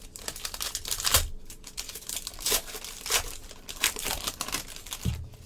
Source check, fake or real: fake